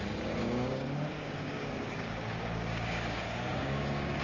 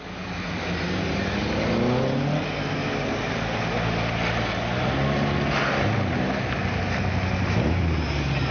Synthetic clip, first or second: first